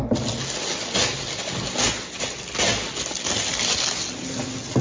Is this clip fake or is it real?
real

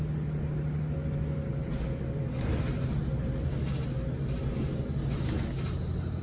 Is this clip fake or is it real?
real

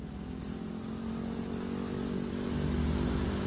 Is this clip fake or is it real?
real